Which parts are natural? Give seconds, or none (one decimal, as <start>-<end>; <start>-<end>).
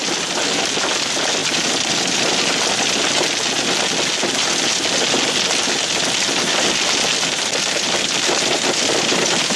0.0-9.6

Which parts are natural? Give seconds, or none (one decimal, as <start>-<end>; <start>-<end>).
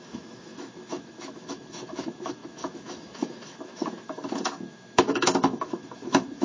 none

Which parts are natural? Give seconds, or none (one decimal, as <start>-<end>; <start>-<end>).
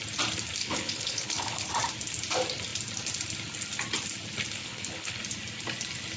0.0-0.6; 1.7-4.6; 5.2-6.2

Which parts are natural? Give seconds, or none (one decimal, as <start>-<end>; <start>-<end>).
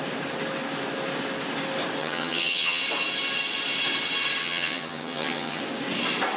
0.0-2.0; 2.8-4.4; 5.6-6.4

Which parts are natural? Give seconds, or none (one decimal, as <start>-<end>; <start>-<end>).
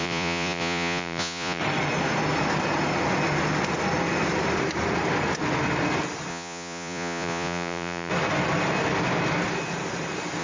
1.6-6.3; 8.1-10.4